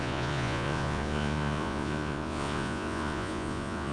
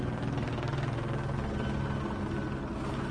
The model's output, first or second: first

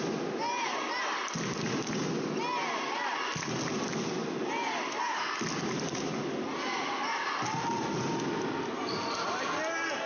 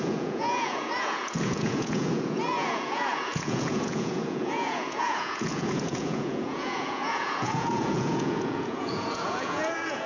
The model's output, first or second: second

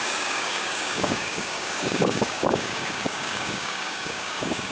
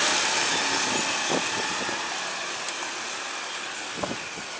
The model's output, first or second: first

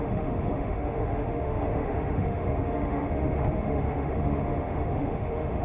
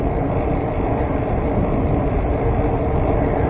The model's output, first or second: first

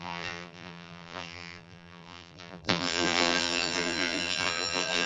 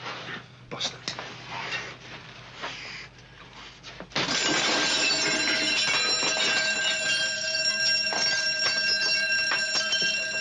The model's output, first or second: first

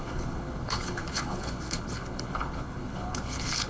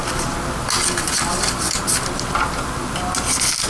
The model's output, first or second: first